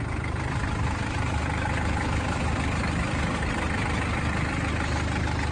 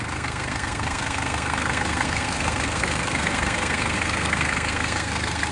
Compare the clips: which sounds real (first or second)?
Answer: first